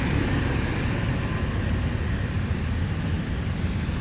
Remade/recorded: recorded